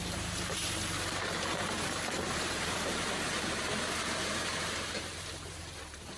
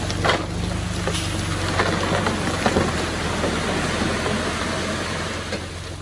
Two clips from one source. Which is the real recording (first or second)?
second